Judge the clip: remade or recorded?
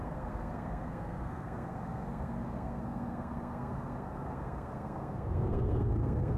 remade